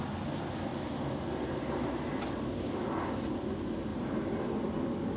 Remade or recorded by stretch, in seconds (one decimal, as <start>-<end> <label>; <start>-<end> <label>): 0.0-5.2 recorded